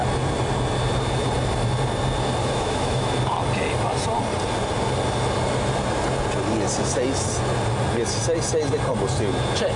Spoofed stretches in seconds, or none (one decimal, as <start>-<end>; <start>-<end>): 2.4-3.1